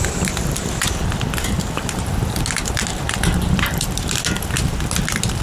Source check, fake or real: real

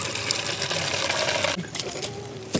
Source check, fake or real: real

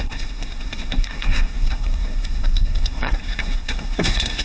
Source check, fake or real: fake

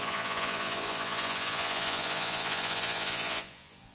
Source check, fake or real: fake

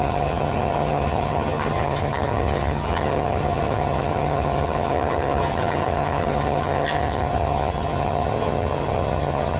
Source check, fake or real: fake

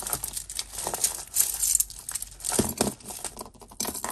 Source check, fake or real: real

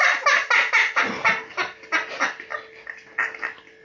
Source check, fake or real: real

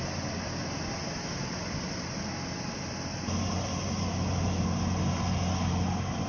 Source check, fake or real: real